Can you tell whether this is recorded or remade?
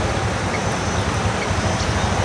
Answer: recorded